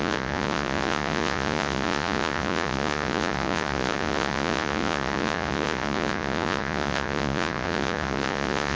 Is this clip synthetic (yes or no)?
yes